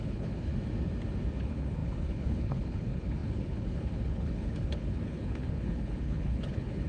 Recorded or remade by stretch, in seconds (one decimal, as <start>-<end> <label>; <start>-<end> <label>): 0.0-0.5 remade; 0.5-1.4 recorded; 1.4-6.9 remade